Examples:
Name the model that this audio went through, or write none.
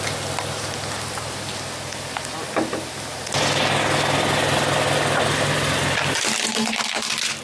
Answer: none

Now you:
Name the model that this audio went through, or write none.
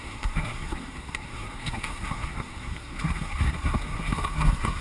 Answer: codec, SNAC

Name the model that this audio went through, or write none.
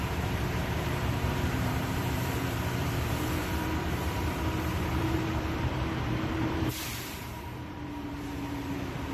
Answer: vocoder, BigVGAN v2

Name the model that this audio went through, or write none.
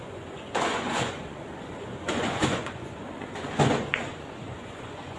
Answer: vocoder, Vocos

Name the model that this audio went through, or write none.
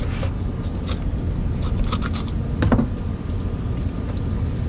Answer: none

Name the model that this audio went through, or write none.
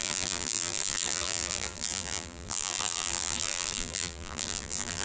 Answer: vocoder, BigVGAN v2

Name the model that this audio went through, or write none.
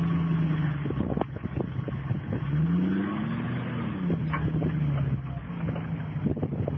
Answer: none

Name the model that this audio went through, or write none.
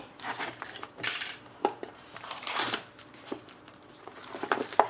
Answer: vocoder, BigVGAN v2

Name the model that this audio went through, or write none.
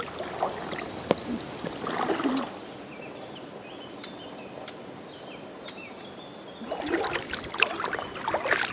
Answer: none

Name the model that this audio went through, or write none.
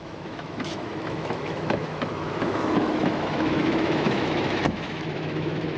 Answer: autoencoder, DAC-VAE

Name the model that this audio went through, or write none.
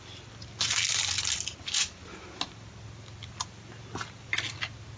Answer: none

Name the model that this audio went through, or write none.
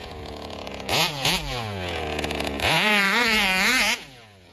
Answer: vocoder, Vocos